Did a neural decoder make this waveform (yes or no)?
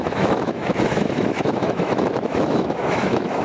yes